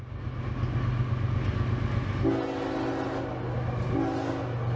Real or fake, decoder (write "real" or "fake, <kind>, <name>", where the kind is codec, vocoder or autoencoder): real